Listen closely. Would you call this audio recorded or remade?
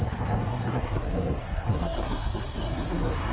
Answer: remade